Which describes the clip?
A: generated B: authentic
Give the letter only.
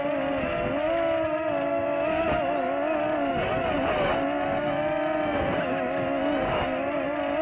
B